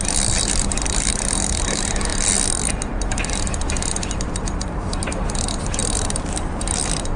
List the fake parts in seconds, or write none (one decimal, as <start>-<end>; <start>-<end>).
0.0-2.1; 2.7-5.8